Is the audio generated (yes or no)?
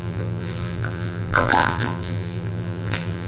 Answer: yes